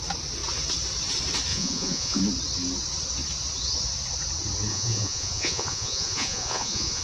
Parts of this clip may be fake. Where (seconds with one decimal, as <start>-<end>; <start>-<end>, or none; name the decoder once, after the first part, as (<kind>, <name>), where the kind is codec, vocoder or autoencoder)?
1.5-2.2 (vocoder, Vocos); 4.7-7.0

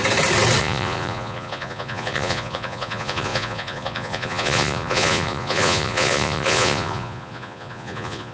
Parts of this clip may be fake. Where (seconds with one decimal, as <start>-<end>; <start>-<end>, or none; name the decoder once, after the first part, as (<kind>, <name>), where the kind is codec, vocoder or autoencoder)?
0.6-8.3 (vocoder, Vocos)

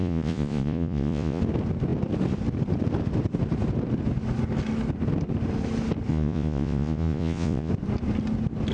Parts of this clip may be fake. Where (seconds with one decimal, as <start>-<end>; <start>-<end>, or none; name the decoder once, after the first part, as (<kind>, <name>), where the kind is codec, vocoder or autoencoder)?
0.0-1.4 (vocoder, Vocos); 6.1-7.7

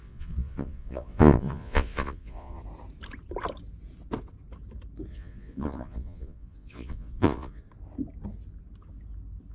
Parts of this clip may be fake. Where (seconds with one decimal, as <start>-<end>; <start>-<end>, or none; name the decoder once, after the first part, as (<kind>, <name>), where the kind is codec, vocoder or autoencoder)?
0.0-2.6 (vocoder, Vocos); 5.1-7.6

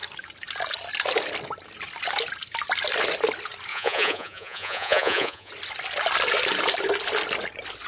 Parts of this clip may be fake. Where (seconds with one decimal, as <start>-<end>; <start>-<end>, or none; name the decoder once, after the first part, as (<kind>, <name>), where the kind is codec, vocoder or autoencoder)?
3.7-5.5 (vocoder, Vocos)